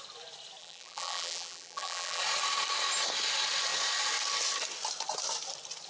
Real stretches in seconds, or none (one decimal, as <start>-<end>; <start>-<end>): 0.0-0.6; 2.2-5.9